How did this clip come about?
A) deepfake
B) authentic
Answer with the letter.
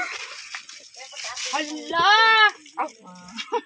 B